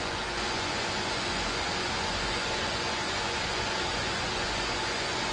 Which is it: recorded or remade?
remade